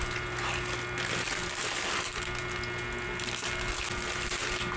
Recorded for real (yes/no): yes